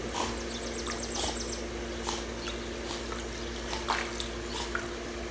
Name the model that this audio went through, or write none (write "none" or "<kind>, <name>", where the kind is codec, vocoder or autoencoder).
none